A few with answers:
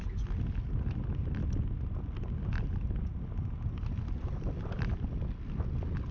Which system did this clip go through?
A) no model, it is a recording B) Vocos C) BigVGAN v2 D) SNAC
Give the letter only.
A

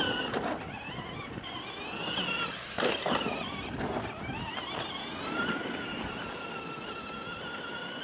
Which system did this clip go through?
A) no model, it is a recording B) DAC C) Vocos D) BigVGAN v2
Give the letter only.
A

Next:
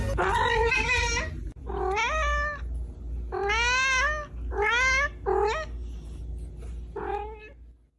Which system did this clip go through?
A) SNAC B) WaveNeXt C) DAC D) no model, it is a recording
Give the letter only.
D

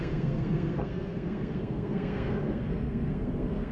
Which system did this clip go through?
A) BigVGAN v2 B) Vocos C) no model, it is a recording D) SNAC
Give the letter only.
D